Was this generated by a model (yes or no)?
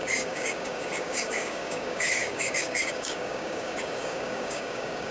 yes